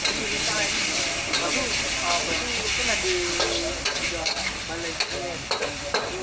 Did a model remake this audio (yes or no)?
no